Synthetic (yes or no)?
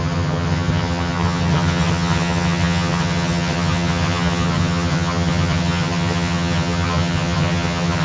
yes